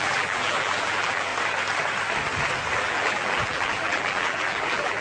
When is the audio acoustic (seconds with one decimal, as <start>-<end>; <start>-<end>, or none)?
1.3-2.8